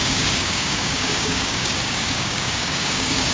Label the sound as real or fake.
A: fake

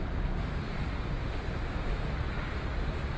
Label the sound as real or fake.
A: real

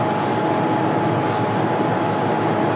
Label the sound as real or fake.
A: real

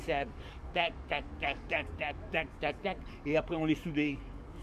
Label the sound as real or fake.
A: fake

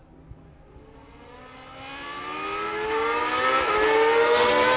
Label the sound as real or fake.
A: real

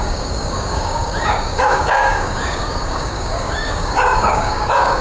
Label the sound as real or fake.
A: fake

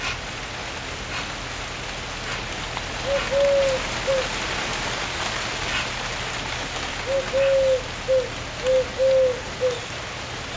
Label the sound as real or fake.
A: real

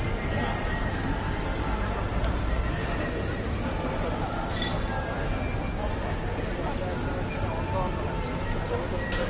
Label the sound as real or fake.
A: real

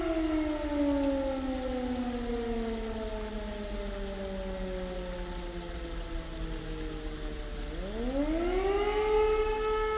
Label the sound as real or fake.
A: real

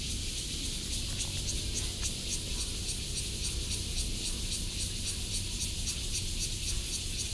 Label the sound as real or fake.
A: real